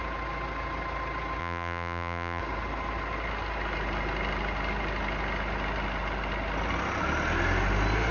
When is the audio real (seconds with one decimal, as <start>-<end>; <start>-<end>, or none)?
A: 0.0-1.4; 2.4-8.1